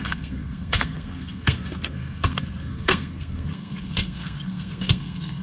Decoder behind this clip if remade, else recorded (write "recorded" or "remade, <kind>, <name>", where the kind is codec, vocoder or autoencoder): remade, codec, SNAC